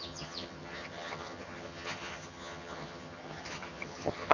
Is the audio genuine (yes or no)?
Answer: no